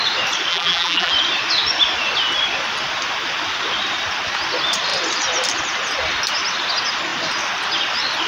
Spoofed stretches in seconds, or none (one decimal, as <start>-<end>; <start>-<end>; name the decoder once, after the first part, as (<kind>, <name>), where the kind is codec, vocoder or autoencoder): 0.5-1.1 (vocoder, BigVGAN v2)